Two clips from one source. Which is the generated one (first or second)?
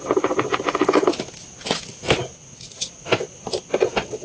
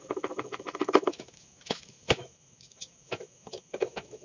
second